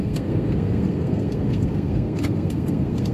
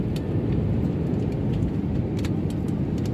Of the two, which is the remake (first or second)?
first